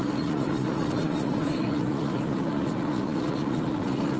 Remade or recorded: remade